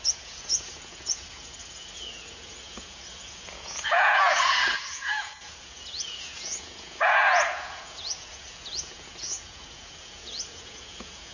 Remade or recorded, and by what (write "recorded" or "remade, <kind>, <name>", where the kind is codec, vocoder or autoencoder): remade, vocoder, Vocos